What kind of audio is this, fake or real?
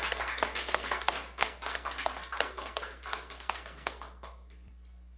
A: fake